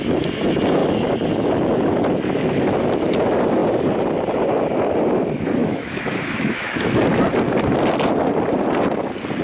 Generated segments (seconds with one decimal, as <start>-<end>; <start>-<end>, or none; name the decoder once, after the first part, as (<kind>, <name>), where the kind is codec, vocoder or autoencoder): 5.6-7.0 (autoencoder, DAC-VAE)